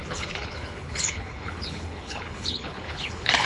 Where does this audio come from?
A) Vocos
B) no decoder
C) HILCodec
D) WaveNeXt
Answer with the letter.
C